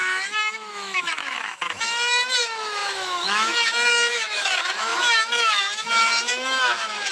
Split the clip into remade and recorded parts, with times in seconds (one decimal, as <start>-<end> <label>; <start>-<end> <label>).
0.0-7.1 remade